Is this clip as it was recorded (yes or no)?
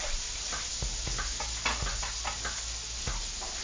yes